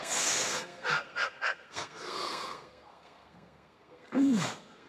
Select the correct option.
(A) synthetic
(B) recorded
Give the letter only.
A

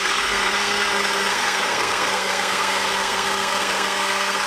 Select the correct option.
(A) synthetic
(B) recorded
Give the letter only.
A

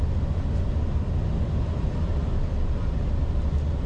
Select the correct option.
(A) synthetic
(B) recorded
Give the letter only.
B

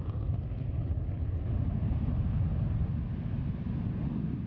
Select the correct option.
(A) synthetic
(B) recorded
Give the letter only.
B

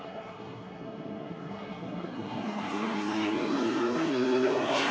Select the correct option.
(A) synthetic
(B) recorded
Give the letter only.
A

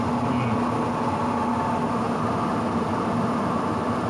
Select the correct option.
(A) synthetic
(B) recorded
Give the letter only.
B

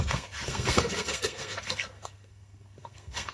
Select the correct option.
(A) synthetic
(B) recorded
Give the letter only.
A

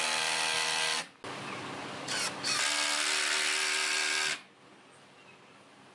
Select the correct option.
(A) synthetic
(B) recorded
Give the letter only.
B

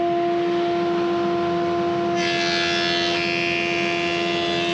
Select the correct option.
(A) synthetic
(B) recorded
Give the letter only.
B